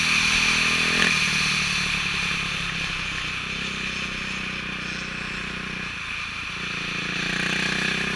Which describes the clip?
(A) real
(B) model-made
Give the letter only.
A